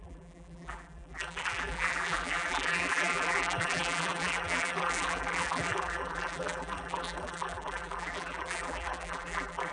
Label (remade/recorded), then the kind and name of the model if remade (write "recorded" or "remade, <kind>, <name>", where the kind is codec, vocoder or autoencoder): remade, vocoder, BigVGAN v2